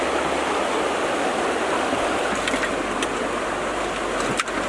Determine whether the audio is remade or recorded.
recorded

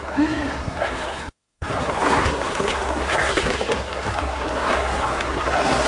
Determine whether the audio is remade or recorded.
remade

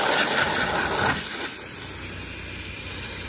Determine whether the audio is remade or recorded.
recorded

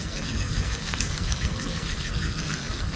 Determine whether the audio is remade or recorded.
remade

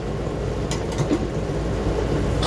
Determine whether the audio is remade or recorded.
recorded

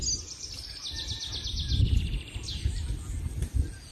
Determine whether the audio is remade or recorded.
recorded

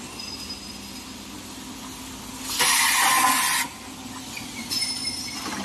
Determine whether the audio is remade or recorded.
recorded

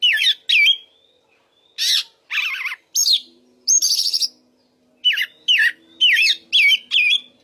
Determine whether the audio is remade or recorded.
recorded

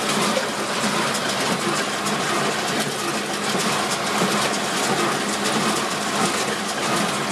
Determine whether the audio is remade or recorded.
recorded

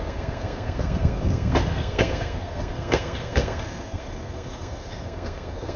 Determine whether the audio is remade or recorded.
remade